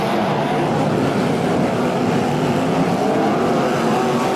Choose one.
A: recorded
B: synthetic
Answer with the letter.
A